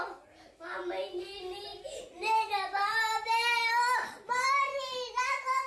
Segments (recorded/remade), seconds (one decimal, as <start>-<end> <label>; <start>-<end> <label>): 0.0-5.7 recorded

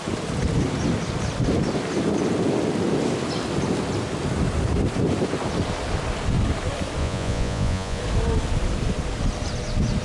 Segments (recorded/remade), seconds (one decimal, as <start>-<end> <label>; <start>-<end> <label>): 0.0-7.0 recorded; 7.0-8.0 remade; 8.0-10.0 recorded

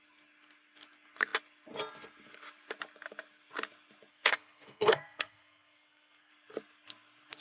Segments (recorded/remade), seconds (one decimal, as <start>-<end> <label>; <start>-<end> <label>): 0.0-4.1 recorded; 4.1-6.3 remade; 6.3-7.4 recorded

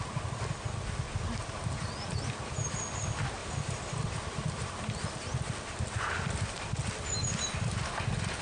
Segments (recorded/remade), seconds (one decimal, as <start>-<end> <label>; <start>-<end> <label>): 0.0-3.4 recorded; 3.4-4.8 remade; 4.8-8.4 recorded

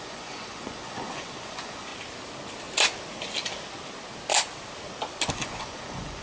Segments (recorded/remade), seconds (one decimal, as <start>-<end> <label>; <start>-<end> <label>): 0.0-1.9 remade; 1.9-5.3 recorded; 5.3-6.2 remade

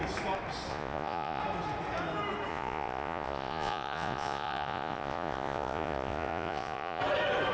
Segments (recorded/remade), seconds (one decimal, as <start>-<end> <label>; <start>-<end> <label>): 0.0-0.7 recorded; 0.7-1.4 remade; 1.4-2.5 recorded; 2.5-7.0 remade; 7.0-7.5 recorded

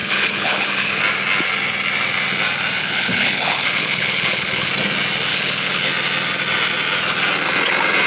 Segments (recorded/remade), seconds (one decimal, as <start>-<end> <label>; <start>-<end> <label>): 0.0-1.0 remade; 1.0-2.8 recorded; 2.8-4.7 remade; 4.7-5.3 recorded; 5.3-5.9 remade; 5.9-8.1 recorded

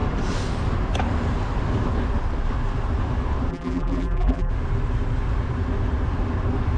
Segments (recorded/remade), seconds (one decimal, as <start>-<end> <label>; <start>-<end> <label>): 0.0-3.5 recorded; 3.5-4.5 remade; 4.5-6.8 recorded